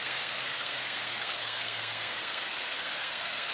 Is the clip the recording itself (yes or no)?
no